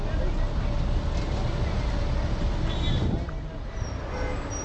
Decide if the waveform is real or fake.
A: real